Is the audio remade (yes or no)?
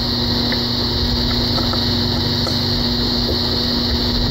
no